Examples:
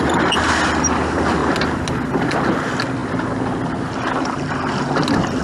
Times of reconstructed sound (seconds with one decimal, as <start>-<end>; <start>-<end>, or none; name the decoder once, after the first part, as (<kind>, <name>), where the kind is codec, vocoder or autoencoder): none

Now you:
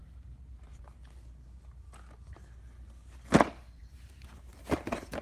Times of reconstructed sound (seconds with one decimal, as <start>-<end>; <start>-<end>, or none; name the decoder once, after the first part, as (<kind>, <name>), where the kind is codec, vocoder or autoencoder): 0.0-0.8 (vocoder, BigVGAN v2); 3.8-5.2

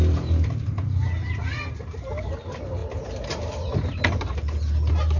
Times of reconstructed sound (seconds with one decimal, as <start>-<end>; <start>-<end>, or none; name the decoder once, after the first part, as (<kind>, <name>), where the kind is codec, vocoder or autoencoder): none